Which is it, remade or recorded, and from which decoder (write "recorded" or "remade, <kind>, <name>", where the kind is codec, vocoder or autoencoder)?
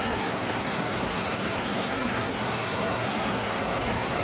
remade, codec, SNAC